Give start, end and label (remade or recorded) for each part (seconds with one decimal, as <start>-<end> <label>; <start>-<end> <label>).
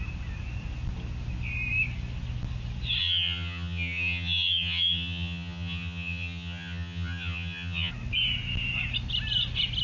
0.0-3.0 recorded; 3.0-7.9 remade; 7.9-9.8 recorded